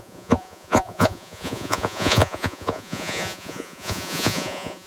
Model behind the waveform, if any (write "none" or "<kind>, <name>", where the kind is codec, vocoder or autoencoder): vocoder, Vocos